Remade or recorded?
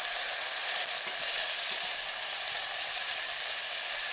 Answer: remade